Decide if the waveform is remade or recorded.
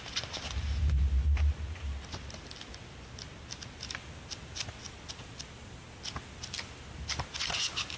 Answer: recorded